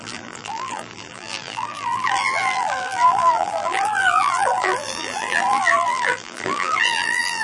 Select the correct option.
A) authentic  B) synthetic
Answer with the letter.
B